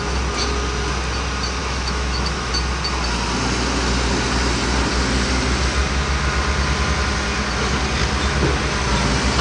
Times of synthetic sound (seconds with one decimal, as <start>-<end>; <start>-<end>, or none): 1.6-2.5